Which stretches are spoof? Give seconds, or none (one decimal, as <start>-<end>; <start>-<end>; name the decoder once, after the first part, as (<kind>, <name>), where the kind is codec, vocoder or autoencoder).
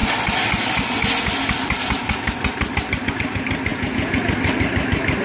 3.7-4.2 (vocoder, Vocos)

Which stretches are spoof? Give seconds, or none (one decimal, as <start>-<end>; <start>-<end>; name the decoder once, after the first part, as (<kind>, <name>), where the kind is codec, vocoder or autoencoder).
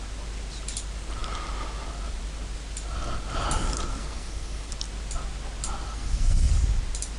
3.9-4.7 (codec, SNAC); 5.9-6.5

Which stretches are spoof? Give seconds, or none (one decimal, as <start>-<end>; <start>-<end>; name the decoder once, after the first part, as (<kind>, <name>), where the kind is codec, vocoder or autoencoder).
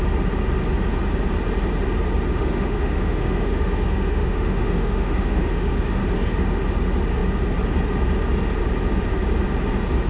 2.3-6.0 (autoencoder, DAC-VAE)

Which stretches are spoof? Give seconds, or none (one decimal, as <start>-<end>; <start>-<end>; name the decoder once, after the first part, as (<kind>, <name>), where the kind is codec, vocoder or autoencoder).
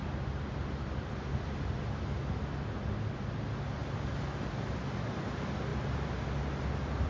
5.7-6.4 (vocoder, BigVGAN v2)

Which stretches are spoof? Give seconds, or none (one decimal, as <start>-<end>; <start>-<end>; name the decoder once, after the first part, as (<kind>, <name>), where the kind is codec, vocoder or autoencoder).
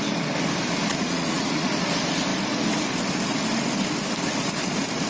0.9-1.7 (vocoder, Vocos)